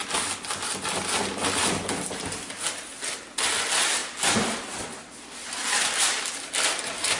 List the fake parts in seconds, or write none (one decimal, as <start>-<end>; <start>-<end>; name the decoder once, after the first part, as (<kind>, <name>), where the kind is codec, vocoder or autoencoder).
none